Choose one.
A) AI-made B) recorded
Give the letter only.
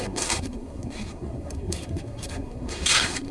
A